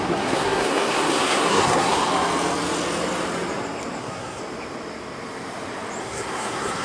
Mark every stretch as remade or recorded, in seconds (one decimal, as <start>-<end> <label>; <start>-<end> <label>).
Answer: 0.0-2.0 remade; 2.0-4.0 recorded; 4.0-4.4 remade; 4.4-6.0 recorded; 6.0-6.8 remade

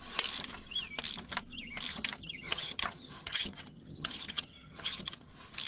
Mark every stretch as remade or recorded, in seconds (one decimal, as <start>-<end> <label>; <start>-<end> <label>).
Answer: 0.0-1.9 recorded; 1.9-5.3 remade; 5.3-5.7 recorded

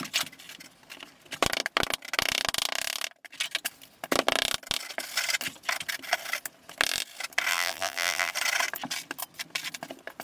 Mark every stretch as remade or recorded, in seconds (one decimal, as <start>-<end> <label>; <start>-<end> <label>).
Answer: 0.0-7.5 recorded; 7.5-8.3 remade; 8.3-10.2 recorded

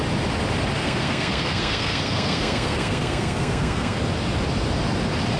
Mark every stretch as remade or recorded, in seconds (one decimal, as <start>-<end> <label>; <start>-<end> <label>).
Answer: 0.0-0.8 recorded; 0.8-4.0 remade; 4.0-5.4 recorded

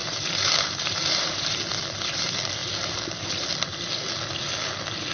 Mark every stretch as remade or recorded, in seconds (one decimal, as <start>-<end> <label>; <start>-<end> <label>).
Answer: 0.0-1.6 remade; 1.6-5.1 recorded

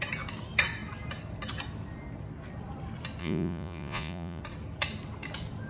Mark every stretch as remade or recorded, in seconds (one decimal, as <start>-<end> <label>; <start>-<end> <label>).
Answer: 0.0-3.2 recorded; 3.2-4.4 remade; 4.4-5.7 recorded

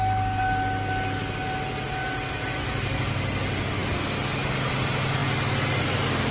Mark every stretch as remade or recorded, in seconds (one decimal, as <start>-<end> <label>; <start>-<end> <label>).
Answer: 0.0-6.3 recorded